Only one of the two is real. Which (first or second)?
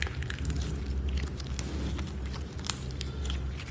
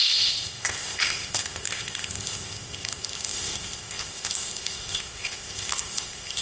first